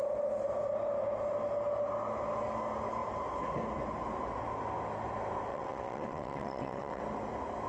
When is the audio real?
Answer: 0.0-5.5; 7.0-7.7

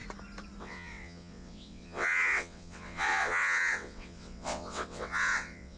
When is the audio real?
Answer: 0.0-0.6

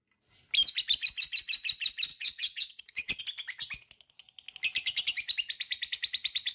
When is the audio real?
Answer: 0.0-2.1; 3.2-6.5

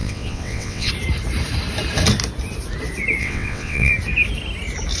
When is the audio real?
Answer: 0.9-3.2; 3.9-5.0

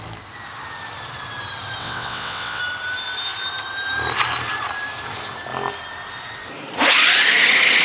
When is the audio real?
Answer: 0.0-1.8; 2.6-7.8

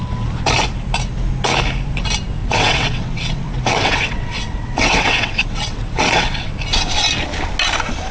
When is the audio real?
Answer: 0.0-2.4; 6.5-8.1

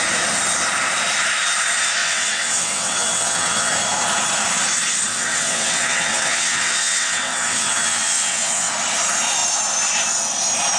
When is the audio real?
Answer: 0.0-2.0; 3.7-5.1; 8.7-10.8

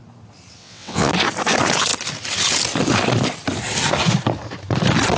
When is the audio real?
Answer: 0.0-0.6; 1.1-5.2